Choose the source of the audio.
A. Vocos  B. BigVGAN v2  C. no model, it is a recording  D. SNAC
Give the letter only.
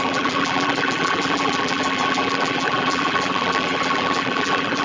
B